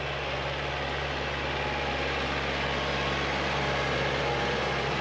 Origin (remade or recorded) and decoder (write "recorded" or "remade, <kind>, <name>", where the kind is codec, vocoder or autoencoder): recorded